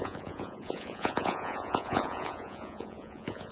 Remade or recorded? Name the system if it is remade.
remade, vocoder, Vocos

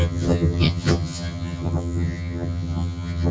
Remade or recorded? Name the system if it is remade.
remade, vocoder, HiFi-GAN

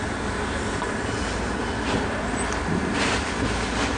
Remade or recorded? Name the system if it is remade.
recorded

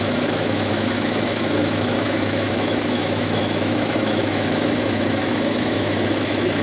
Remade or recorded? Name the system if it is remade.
remade, autoencoder, DAC-VAE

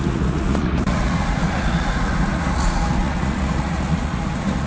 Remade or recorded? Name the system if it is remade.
remade, vocoder, Vocos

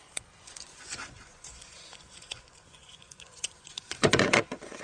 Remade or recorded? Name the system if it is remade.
remade, vocoder, Vocos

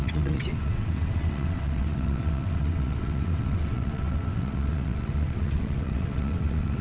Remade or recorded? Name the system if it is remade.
remade, vocoder, WaveNeXt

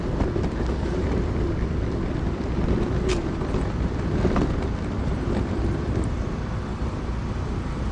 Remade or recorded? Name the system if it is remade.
remade, vocoder, BigVGAN v2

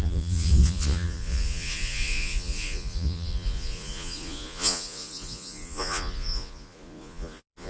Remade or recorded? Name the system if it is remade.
remade, vocoder, Vocos